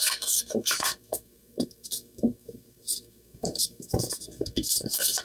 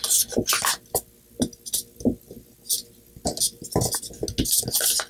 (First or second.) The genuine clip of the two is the second